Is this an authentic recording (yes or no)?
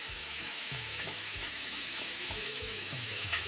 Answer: no